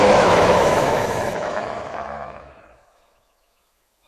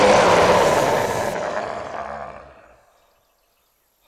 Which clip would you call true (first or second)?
second